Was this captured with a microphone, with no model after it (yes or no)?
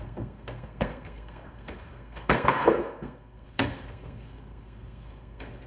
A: no